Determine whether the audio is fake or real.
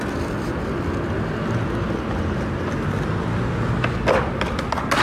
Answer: real